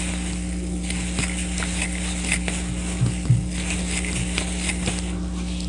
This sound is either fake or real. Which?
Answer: real